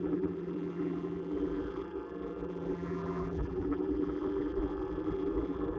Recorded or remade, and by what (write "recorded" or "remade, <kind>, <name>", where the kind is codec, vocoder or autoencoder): remade, vocoder, BigVGAN v2